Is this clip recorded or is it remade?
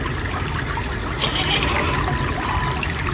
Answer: recorded